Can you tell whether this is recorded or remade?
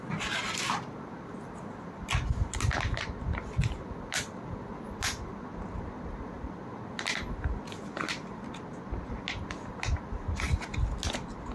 recorded